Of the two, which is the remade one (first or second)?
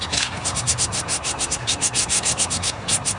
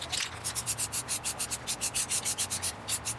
first